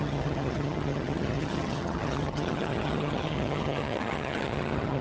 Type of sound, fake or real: fake